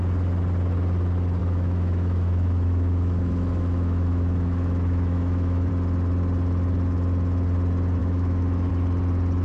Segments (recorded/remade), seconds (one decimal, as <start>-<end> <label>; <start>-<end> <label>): 0.0-1.4 recorded; 1.4-5.7 remade; 5.7-8.0 recorded; 8.0-8.7 remade; 8.7-9.4 recorded